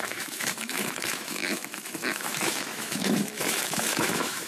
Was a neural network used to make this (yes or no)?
yes